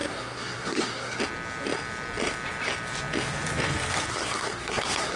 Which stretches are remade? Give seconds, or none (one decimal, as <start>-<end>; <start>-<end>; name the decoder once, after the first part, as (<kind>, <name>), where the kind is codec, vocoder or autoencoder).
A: 0.0-1.2 (codec, SNAC); 4.1-5.2